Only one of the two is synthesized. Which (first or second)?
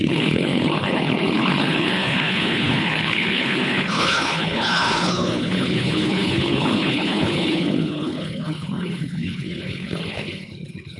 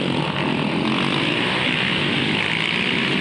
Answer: first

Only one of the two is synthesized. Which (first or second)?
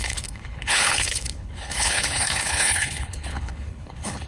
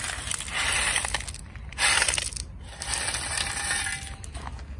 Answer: first